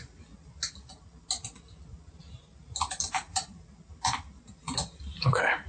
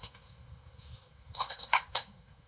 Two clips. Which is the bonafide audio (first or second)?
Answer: first